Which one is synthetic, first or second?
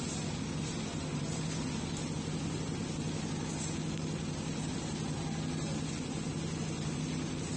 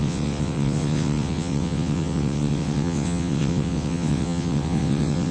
second